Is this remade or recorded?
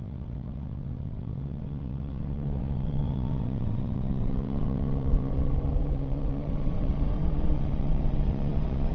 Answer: remade